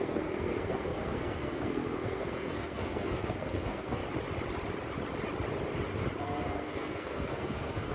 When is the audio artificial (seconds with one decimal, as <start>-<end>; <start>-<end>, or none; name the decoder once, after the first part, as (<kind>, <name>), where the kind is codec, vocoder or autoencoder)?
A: 0.0-4.0 (codec, SNAC); 6.2-7.9